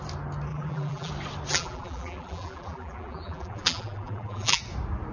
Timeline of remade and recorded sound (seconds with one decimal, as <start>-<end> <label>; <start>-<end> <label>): 0.0-0.5 recorded; 0.5-1.1 remade; 1.1-1.5 recorded; 1.5-4.6 remade; 4.6-5.1 recorded